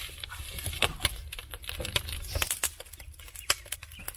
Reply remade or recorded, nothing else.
recorded